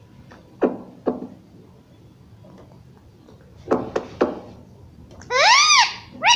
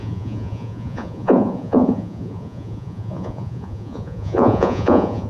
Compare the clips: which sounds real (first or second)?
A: first